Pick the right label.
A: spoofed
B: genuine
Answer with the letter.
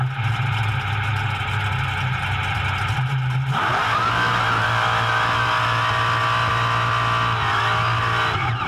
B